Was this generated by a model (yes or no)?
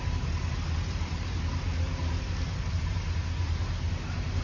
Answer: no